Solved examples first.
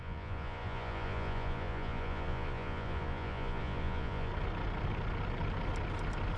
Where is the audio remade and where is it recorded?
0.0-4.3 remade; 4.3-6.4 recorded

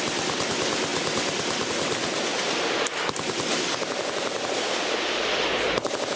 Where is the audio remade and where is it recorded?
0.0-6.2 recorded

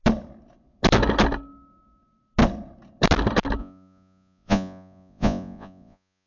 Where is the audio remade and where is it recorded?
0.0-3.6 recorded; 3.6-6.3 remade

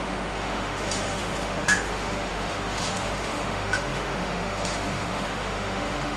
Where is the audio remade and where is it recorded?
0.0-6.2 remade

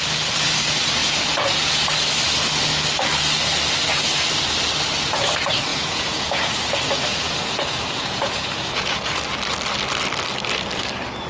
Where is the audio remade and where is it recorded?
0.0-5.7 recorded; 5.7-6.5 remade; 6.5-7.1 recorded; 7.1-9.2 remade; 9.2-11.3 recorded